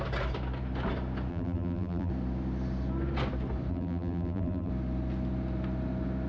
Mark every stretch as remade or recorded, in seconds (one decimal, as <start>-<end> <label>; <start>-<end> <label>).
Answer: 0.0-1.3 recorded; 1.3-2.1 remade; 2.1-3.7 recorded; 3.7-4.7 remade; 4.7-6.3 recorded